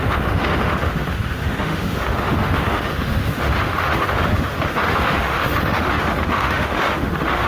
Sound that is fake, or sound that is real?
fake